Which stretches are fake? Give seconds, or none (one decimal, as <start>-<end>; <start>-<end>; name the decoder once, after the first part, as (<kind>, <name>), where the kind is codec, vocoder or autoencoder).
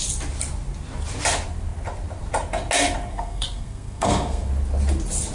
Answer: 3.1-4.5 (codec, SNAC)